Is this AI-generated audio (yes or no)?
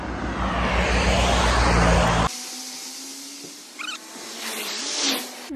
no